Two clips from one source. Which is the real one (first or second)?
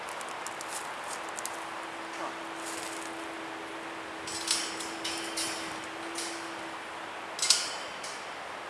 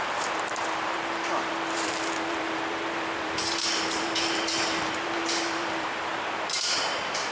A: first